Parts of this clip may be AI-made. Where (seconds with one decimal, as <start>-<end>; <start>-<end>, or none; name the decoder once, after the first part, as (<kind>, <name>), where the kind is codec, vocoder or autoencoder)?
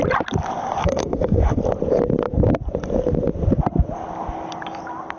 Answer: 0.8-1.6 (codec, SNAC)